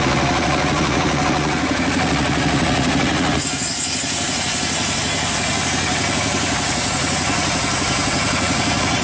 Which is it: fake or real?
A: fake